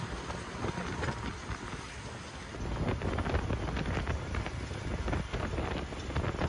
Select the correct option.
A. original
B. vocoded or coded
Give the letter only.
A